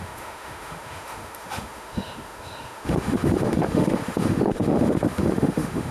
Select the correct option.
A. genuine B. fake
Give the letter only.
B